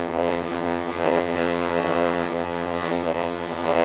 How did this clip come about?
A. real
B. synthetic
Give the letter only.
B